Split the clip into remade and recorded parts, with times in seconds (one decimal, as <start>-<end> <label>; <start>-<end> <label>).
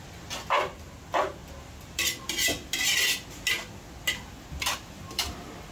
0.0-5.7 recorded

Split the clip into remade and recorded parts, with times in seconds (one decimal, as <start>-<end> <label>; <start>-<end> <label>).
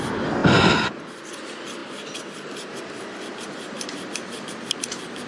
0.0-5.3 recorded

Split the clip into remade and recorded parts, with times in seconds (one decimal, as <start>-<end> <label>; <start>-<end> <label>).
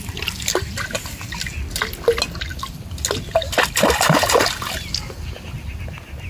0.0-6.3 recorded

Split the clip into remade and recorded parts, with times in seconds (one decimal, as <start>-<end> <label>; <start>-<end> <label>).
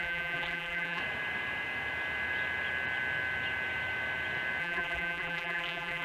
0.0-1.0 remade; 1.0-4.6 recorded; 4.6-6.0 remade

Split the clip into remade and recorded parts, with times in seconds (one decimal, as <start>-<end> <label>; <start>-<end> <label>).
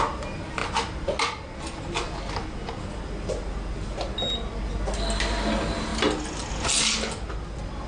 0.0-7.9 recorded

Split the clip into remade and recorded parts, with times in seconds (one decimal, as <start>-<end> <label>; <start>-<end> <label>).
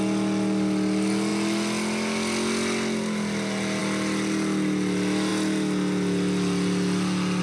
0.0-7.4 recorded